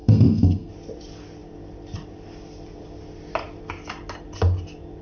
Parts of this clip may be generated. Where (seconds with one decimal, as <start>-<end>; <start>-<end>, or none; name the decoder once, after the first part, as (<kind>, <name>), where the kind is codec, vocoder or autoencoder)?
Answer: 0.0-0.7 (codec, SNAC)